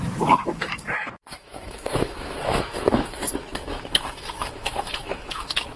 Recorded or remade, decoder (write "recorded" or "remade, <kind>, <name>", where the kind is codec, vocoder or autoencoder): remade, autoencoder, DAC-VAE